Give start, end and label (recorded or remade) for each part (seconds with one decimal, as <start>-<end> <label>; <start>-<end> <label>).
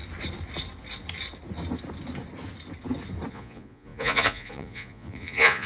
0.0-3.3 recorded; 3.3-5.7 remade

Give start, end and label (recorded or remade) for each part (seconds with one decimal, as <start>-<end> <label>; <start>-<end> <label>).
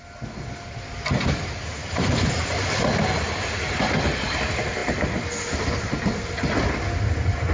0.0-7.5 recorded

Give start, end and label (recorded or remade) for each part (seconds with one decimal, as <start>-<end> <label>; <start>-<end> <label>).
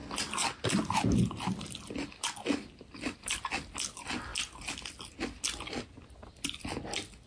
0.0-7.3 recorded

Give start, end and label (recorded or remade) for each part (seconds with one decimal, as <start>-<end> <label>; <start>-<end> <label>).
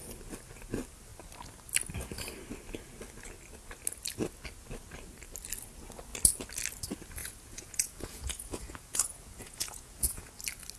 0.0-7.2 recorded; 7.2-10.3 remade; 10.3-10.8 recorded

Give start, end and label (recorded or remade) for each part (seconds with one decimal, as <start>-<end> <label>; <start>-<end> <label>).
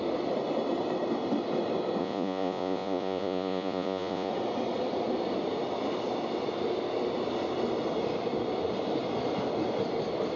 0.0-2.0 recorded; 2.0-4.3 remade; 4.3-10.4 recorded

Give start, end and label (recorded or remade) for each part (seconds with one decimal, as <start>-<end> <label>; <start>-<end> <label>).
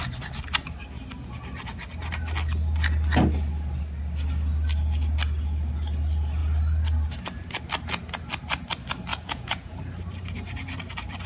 0.0-9.1 recorded; 9.1-9.8 remade; 9.8-11.3 recorded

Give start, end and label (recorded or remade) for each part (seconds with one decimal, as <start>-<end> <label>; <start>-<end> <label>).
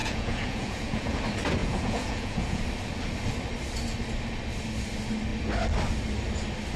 0.0-1.2 remade; 1.2-1.6 recorded; 1.6-2.6 remade; 2.6-6.8 recorded